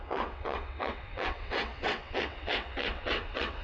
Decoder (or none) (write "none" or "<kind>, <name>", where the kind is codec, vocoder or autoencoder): vocoder, WaveNeXt